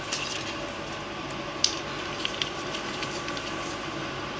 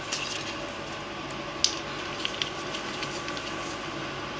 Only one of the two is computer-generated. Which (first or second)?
first